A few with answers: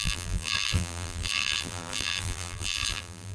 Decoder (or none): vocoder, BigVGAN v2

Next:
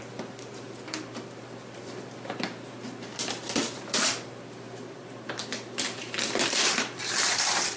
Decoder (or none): vocoder, BigVGAN v2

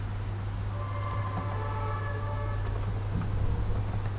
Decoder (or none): none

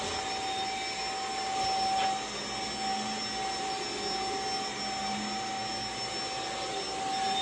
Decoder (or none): none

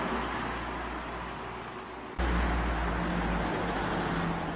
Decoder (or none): none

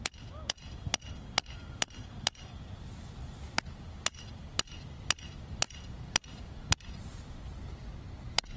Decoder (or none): none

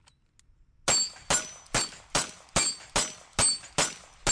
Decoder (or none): none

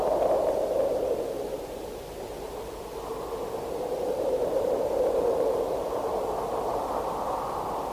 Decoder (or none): none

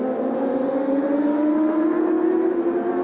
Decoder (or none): none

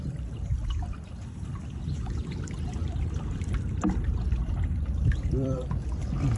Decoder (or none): vocoder, BigVGAN v2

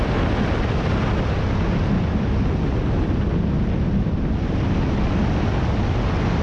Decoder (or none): none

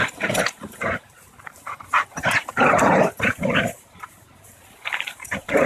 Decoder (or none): vocoder, BigVGAN v2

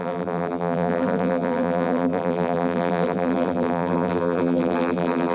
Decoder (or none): vocoder, BigVGAN v2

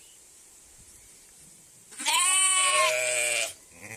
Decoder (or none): vocoder, BigVGAN v2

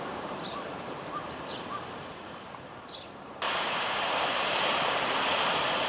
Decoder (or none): vocoder, BigVGAN v2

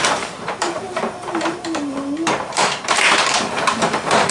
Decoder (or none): vocoder, BigVGAN v2